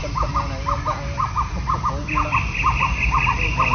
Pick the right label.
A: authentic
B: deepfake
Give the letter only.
A